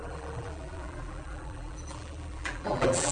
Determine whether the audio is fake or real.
fake